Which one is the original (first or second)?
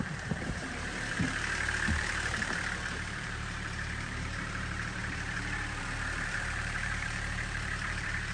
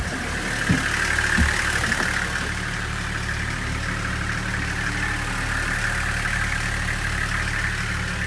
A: second